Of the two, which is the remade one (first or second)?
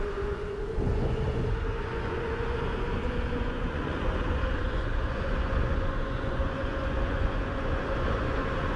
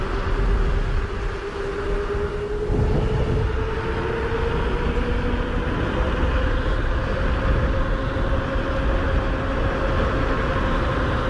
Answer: first